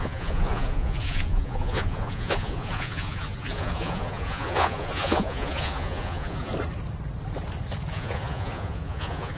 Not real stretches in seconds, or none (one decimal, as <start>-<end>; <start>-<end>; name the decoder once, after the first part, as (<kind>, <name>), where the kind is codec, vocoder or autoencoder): 0.0-6.5 (vocoder, Vocos); 7.9-9.4